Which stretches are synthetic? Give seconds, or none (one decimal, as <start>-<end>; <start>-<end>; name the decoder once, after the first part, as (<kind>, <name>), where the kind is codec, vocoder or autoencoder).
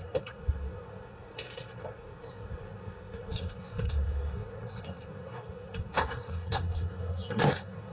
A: 0.0-7.9 (codec, SNAC)